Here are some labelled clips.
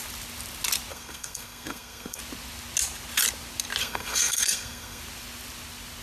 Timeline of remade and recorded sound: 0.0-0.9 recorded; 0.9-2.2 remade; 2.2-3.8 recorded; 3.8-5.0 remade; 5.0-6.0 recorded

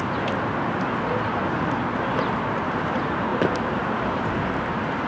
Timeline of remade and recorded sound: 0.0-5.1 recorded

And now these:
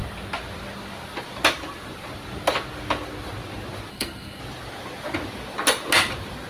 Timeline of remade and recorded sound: 0.0-3.9 recorded; 3.9-4.4 remade; 4.4-6.5 recorded

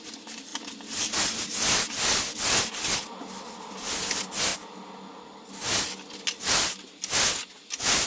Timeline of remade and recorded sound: 0.0-8.1 recorded

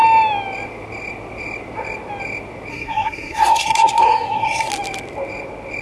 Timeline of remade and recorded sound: 0.0-2.7 recorded; 2.7-4.7 remade; 4.7-5.8 recorded

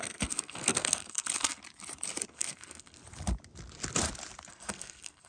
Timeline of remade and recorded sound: 0.0-1.6 remade; 1.6-2.3 recorded; 2.3-3.0 remade; 3.0-4.5 recorded; 4.5-5.3 remade

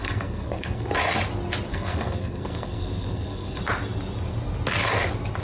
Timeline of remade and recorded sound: 0.0-0.9 remade; 0.9-1.7 recorded; 1.7-3.6 remade; 3.6-5.4 recorded